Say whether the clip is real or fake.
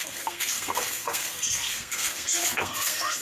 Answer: fake